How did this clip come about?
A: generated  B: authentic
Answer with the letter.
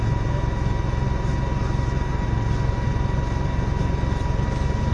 B